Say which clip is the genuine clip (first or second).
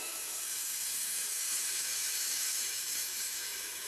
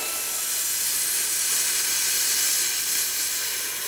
second